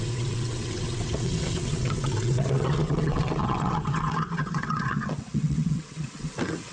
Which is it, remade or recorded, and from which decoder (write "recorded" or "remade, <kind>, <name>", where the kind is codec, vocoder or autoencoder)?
remade, vocoder, WaveNeXt